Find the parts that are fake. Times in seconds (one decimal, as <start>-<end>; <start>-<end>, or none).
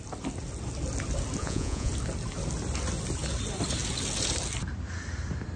1.4-1.9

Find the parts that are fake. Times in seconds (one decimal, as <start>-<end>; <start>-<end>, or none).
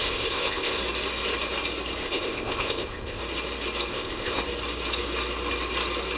0.0-0.8; 2.0-3.2; 3.9-4.4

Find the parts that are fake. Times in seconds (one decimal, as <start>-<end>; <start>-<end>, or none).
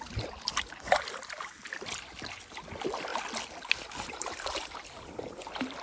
none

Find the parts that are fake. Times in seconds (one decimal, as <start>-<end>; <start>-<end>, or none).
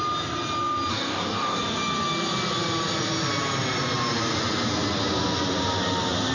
0.9-1.6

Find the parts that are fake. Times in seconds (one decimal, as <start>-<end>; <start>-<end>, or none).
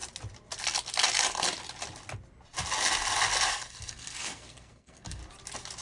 3.5-5.2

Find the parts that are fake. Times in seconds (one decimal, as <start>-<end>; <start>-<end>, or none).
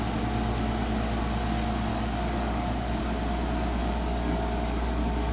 1.9-3.0; 3.8-5.3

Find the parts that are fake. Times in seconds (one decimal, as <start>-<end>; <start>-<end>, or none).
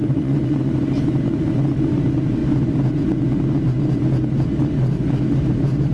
0.0-0.7